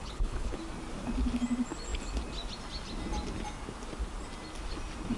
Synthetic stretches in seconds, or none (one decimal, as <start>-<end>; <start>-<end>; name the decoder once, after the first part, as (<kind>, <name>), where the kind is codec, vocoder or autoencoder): 0.0-0.6 (codec, HILCodec)

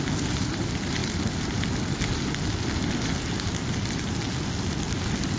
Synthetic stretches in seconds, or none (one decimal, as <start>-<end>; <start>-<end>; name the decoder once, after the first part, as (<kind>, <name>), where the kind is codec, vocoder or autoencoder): none

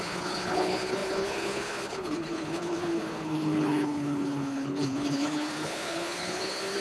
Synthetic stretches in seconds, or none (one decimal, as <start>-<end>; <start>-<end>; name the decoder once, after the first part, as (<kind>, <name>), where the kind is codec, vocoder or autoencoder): 0.0-6.8 (codec, HILCodec)